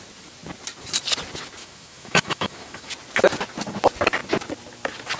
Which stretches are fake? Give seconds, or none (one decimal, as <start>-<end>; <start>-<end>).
1.6-2.9

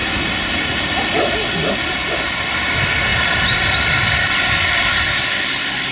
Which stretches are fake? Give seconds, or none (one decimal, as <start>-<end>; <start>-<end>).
none

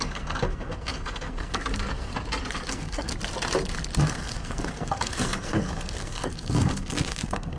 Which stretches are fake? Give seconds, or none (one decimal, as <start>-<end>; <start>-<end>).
0.0-2.1; 2.7-3.1; 4.0-7.6

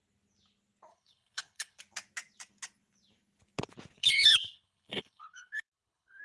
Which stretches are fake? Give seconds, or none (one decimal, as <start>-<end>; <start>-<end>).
0.9-1.8; 4.0-6.2